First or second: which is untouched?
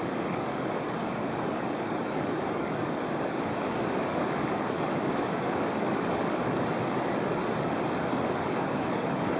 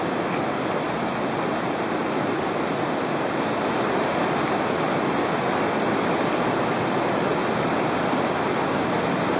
second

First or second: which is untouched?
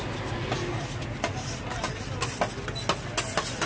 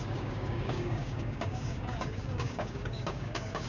first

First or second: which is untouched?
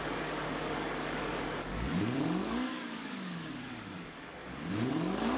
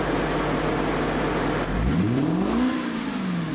second